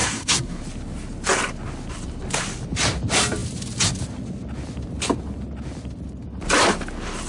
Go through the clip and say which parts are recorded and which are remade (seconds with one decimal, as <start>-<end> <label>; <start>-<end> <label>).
0.0-0.6 remade; 0.6-7.3 recorded

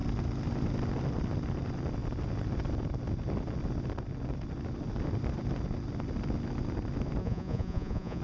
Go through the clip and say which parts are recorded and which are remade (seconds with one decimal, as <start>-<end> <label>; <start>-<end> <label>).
0.0-7.2 recorded; 7.2-8.2 remade

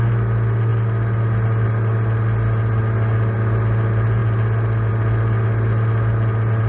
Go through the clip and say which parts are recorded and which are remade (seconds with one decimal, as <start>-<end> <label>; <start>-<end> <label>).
0.0-6.7 recorded

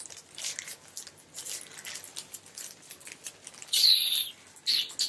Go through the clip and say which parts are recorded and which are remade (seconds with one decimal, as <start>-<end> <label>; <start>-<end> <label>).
0.0-2.1 recorded; 2.1-2.9 remade; 2.9-3.6 recorded; 3.6-4.1 remade; 4.1-5.1 recorded

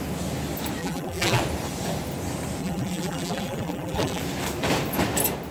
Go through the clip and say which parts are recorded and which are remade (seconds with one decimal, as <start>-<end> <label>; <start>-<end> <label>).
0.0-0.8 recorded; 0.8-1.4 remade; 1.4-2.6 recorded; 2.6-4.2 remade; 4.2-5.5 recorded

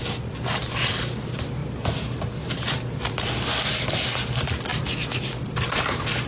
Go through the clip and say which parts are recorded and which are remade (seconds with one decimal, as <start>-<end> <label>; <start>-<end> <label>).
0.0-6.3 recorded

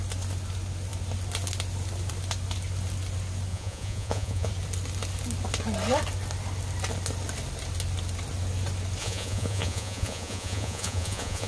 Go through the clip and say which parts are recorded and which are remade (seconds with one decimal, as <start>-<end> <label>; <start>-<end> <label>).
0.0-3.5 recorded; 3.5-4.5 remade; 4.5-9.0 recorded; 9.0-11.5 remade

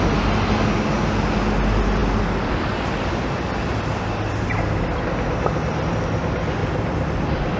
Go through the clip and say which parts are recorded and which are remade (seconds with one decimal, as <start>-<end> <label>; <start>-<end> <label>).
0.0-7.6 recorded